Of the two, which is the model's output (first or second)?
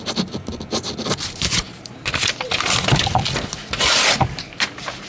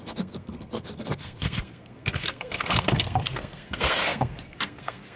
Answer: second